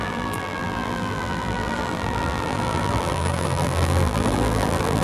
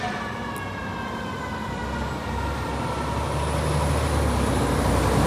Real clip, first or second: second